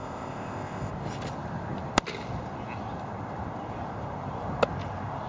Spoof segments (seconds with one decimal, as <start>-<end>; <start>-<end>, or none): 0.0-0.9